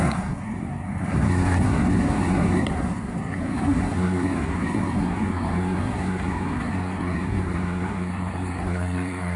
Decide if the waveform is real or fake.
fake